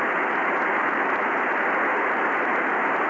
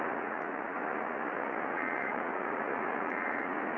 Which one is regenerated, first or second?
second